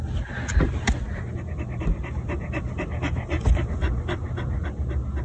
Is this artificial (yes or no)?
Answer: no